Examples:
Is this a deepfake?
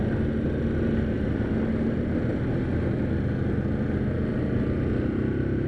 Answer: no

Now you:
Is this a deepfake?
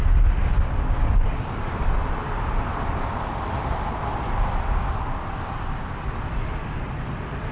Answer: no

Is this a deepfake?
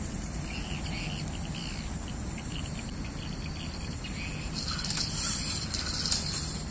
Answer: no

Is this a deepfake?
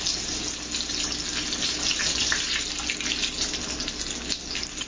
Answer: no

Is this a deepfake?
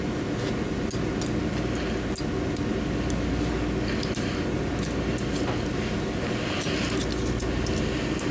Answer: no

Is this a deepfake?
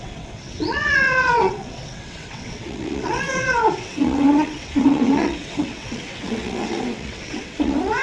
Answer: yes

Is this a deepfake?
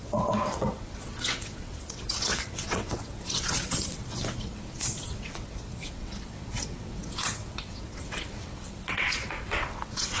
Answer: yes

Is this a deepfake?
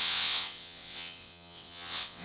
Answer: yes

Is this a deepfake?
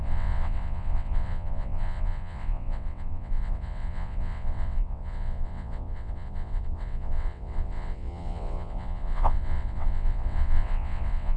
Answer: yes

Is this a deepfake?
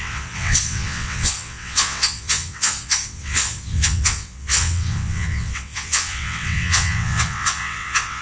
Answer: yes